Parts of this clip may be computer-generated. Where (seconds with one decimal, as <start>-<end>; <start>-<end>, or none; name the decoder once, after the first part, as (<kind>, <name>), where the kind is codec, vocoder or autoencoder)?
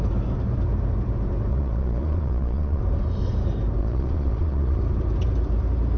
1.5-2.8 (vocoder, Vocos); 3.8-4.8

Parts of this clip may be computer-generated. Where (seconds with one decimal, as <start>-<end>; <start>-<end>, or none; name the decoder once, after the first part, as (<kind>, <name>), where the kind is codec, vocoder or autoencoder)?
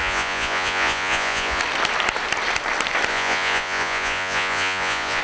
0.0-1.6 (vocoder, Vocos); 3.1-5.2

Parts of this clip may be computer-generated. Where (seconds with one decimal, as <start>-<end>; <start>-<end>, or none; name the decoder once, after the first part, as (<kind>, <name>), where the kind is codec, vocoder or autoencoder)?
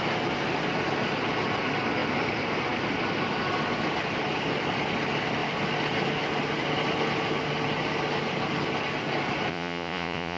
9.5-10.4 (vocoder, Vocos)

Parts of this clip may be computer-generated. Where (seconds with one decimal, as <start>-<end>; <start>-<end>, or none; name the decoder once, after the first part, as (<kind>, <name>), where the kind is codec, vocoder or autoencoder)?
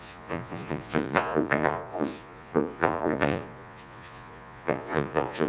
0.0-5.5 (vocoder, Vocos)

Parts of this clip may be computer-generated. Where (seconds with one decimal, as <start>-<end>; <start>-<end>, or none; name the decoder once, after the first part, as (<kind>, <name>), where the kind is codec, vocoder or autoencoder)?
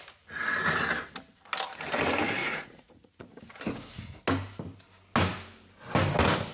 2.4-3.4 (vocoder, Vocos)